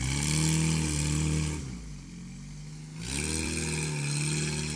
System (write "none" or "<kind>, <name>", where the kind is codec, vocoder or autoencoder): none